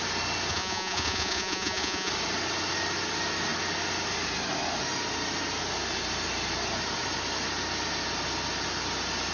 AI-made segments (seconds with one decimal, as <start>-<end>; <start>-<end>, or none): 0.5-2.1